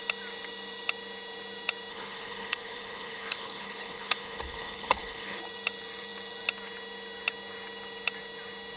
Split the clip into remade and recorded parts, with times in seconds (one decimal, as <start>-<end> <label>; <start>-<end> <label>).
0.0-1.9 recorded; 1.9-5.4 remade; 5.4-8.8 recorded